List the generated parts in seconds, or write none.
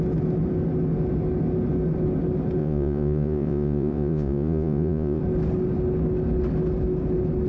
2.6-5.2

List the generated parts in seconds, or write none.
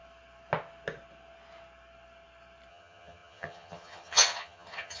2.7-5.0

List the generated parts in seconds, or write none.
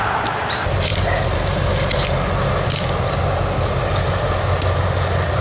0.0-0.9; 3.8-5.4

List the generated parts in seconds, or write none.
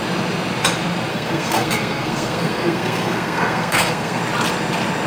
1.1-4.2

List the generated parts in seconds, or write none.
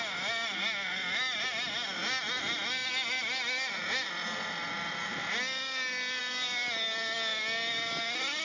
none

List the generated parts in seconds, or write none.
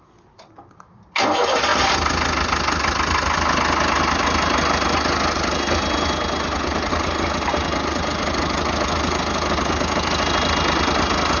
none